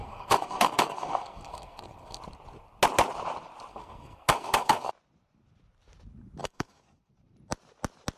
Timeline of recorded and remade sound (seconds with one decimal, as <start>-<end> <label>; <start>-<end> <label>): 0.0-2.2 remade; 2.2-3.7 recorded; 3.7-4.9 remade; 4.9-6.4 recorded; 6.4-7.1 remade; 7.1-8.2 recorded